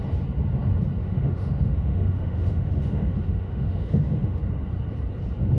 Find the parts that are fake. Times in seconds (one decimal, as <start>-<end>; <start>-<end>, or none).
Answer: 1.0-4.4